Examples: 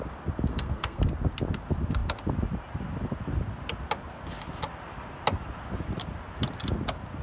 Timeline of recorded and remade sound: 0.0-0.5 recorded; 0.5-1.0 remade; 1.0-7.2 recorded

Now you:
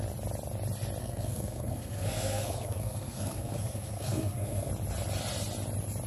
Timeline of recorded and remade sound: 0.0-1.0 recorded; 1.0-4.7 remade; 4.7-6.1 recorded

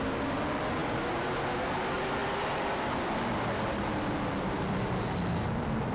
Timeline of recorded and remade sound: 0.0-5.9 recorded

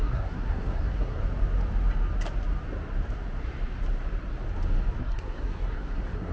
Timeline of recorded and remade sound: 0.0-1.2 remade; 1.2-5.0 recorded; 5.0-6.3 remade

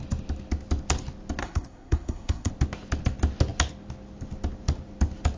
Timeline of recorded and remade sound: 0.0-1.4 recorded; 1.4-2.5 remade; 2.5-5.4 recorded